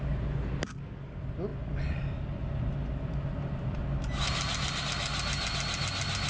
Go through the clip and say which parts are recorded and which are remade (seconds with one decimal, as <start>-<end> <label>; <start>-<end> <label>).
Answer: 0.0-6.3 recorded